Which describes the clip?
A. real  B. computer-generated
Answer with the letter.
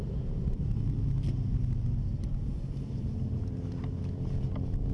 A